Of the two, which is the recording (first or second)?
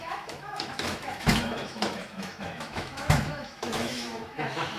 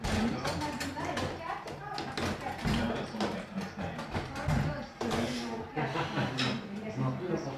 second